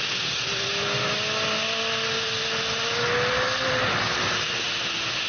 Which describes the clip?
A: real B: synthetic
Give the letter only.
A